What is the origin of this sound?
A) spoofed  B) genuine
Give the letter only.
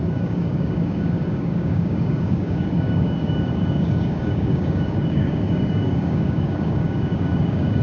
A